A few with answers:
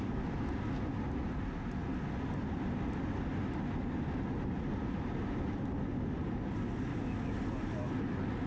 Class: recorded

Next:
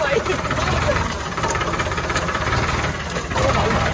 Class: remade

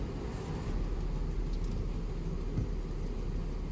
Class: recorded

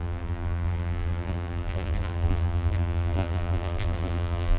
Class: remade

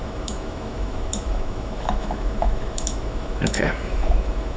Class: remade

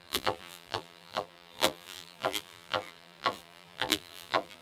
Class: remade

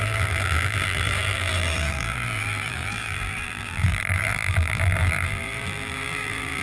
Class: remade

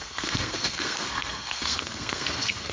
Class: remade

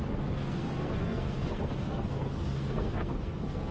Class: remade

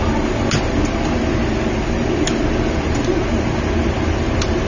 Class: recorded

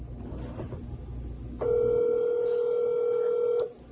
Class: recorded